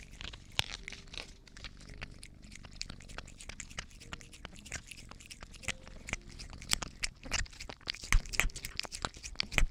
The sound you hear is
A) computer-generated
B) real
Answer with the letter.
B